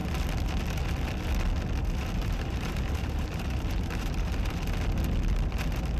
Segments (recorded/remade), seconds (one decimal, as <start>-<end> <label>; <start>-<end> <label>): 0.0-2.2 recorded; 2.2-4.6 remade; 4.6-6.0 recorded